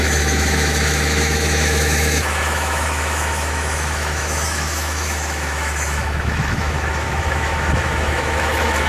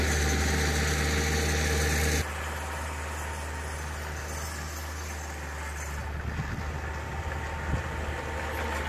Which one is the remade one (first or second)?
first